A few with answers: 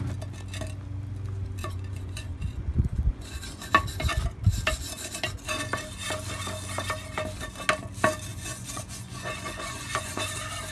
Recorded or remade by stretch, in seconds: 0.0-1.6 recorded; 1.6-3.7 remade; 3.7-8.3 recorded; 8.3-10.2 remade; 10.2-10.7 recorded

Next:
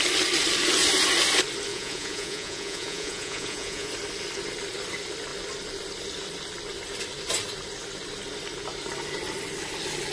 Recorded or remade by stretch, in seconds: 0.0-1.7 recorded; 1.7-3.9 remade; 3.9-10.1 recorded

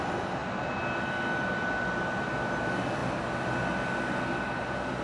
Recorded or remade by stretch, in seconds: 0.0-5.0 recorded